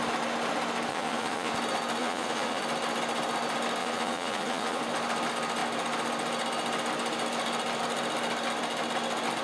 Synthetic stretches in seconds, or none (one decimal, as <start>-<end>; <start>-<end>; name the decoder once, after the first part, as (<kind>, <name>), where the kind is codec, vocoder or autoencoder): 0.9-1.5 (vocoder, Vocos); 2.0-2.6; 3.8-4.8

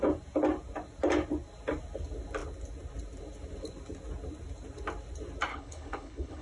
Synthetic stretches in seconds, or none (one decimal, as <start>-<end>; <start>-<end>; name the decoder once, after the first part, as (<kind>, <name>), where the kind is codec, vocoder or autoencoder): 5.5-6.4 (codec, HILCodec)

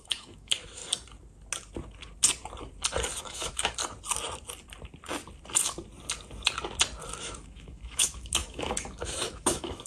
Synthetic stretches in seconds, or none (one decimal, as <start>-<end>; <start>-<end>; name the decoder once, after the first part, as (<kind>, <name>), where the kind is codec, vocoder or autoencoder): 0.0-0.8 (autoencoder, DAC-VAE); 3.2-3.8; 7.2-9.9

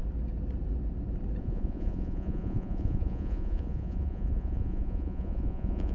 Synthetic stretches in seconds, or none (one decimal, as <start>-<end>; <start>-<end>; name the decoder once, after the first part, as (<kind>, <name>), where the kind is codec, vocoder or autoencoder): 1.4-5.9 (vocoder, Vocos)

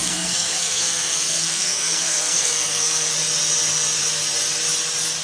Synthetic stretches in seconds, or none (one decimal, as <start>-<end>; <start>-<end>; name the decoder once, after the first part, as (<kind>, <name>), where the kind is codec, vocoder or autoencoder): 0.0-3.1 (codec, SNAC)

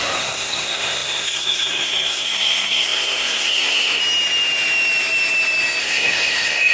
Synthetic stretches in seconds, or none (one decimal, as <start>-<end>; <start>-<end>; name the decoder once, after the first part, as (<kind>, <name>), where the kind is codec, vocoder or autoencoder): 0.0-4.0 (codec, SNAC); 5.8-6.7